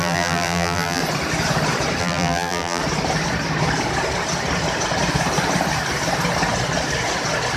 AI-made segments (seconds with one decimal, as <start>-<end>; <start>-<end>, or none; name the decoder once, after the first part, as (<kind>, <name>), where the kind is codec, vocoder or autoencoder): 0.0-1.0 (vocoder, BigVGAN v2); 2.0-2.8